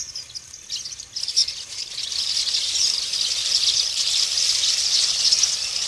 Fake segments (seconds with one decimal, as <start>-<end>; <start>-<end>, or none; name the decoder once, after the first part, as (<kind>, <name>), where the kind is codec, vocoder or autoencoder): none